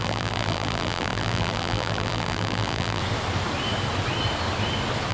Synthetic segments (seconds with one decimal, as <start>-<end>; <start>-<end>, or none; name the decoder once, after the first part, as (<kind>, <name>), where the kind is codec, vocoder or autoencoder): 0.0-3.0 (vocoder, BigVGAN v2)